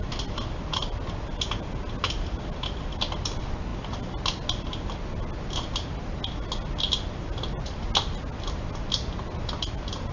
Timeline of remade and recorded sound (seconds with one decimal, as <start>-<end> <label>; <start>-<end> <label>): 0.0-10.1 recorded

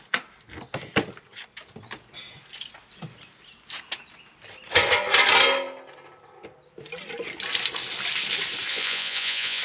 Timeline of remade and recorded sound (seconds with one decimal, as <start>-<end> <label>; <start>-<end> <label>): 0.0-8.7 recorded; 8.7-9.6 remade

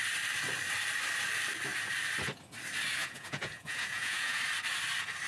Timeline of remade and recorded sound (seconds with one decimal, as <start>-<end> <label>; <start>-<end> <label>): 0.0-3.0 recorded; 3.0-4.4 remade; 4.4-5.3 recorded